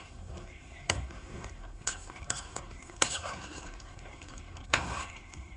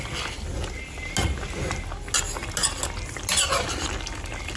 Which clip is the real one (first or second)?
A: second